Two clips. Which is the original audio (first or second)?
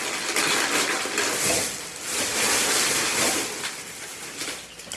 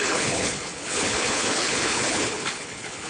first